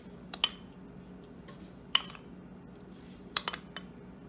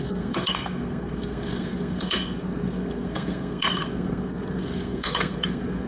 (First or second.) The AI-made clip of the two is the second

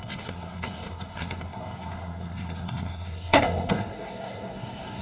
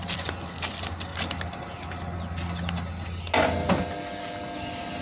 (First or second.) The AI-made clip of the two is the first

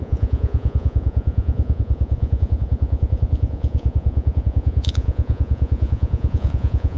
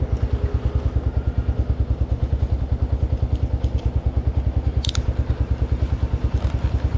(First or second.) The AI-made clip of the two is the first